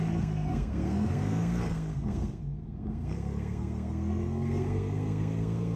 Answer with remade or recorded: remade